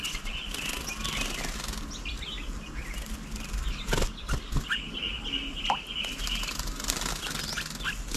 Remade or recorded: recorded